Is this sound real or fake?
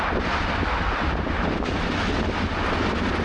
real